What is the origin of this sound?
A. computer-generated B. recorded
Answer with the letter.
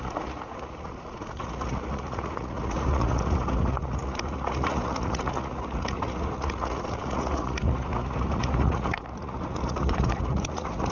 A